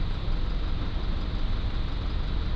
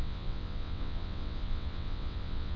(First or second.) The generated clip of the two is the second